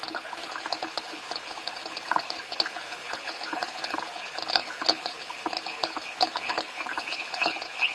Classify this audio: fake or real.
fake